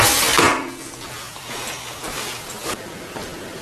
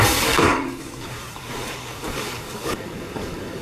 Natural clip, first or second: first